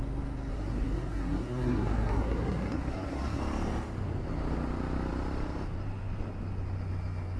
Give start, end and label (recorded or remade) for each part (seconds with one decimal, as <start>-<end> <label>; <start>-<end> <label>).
0.0-0.5 recorded; 0.5-3.4 remade; 3.4-7.4 recorded